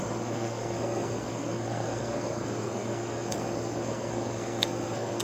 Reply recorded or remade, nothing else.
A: remade